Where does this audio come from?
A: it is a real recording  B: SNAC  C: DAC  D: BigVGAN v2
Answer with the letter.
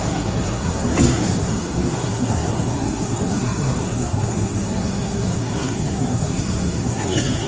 B